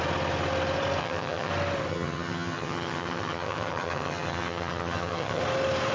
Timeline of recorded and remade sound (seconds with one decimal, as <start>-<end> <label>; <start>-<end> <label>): 0.0-1.0 recorded; 1.0-1.5 remade; 1.5-1.9 recorded; 1.9-5.4 remade; 5.4-5.9 recorded